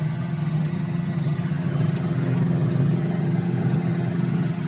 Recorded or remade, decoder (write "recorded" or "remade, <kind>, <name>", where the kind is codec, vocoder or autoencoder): remade, vocoder, HiFi-GAN